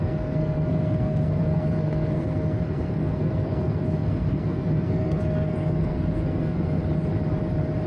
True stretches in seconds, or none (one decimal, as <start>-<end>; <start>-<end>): 6.8-7.9